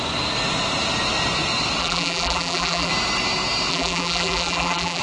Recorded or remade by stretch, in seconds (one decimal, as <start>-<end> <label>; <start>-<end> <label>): 0.0-1.8 recorded; 1.8-2.9 remade; 2.9-3.7 recorded; 3.7-5.0 remade